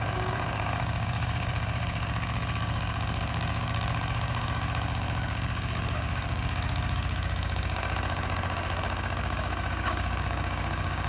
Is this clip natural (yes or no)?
no